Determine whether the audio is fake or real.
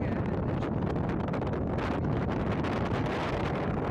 real